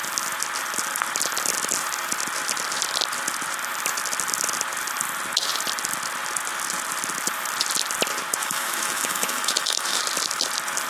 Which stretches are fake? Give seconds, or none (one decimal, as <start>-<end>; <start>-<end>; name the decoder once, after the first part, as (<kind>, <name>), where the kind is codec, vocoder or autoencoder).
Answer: 8.4-10.0 (autoencoder, DAC-VAE)